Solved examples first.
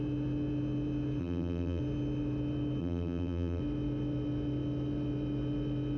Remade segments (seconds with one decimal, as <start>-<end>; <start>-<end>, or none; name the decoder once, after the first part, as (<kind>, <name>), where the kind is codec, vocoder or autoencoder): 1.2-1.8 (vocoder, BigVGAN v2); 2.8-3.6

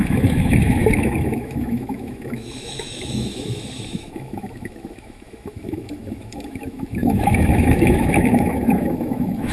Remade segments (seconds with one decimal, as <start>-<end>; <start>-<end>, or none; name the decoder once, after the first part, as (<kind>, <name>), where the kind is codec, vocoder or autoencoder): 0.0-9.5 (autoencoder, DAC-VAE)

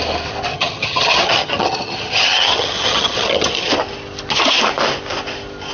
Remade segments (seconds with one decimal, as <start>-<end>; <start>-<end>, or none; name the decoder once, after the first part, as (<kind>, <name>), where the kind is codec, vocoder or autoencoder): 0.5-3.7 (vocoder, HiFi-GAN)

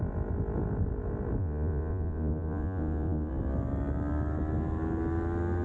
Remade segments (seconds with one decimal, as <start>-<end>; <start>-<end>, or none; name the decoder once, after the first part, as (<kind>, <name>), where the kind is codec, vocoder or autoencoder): 1.4-3.3 (vocoder, Vocos)